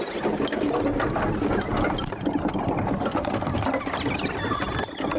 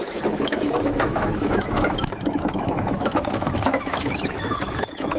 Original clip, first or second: first